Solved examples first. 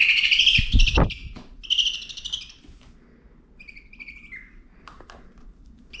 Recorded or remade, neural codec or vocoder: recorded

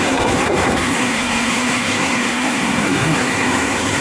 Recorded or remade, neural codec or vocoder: remade, codec, SNAC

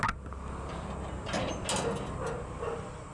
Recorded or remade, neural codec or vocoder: recorded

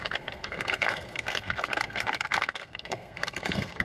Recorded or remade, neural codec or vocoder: remade, codec, SNAC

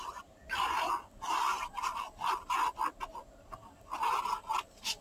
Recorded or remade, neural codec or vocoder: recorded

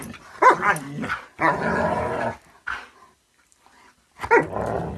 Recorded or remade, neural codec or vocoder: recorded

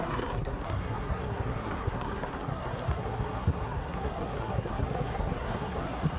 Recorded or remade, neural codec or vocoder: remade, codec, SNAC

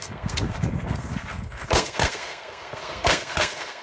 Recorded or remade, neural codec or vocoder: remade, codec, SNAC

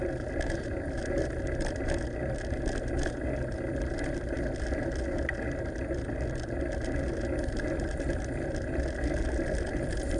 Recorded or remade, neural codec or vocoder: recorded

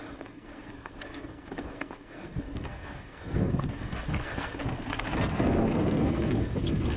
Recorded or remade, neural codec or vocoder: remade, codec, SNAC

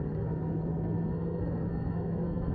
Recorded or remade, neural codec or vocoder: remade, codec, SNAC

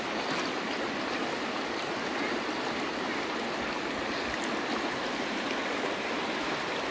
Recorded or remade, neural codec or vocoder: recorded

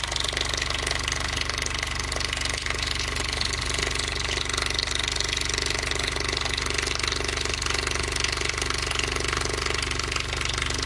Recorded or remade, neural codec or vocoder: recorded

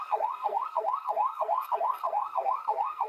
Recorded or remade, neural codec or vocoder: remade, codec, SNAC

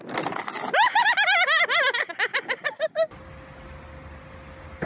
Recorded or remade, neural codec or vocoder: recorded